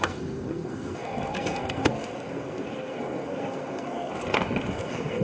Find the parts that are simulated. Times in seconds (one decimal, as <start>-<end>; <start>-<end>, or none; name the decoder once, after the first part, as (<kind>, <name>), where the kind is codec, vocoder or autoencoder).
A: 0.0-5.2 (codec, SNAC)